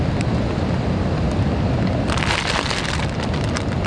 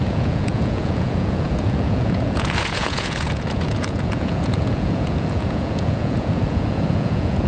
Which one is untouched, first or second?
first